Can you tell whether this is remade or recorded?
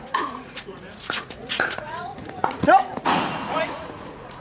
remade